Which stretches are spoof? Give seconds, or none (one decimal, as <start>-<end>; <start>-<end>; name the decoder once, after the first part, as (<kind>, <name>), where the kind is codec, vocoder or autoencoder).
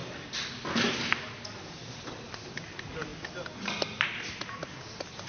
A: none